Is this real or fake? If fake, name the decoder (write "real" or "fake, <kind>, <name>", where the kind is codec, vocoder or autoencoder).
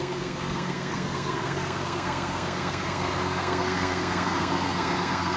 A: fake, codec, SNAC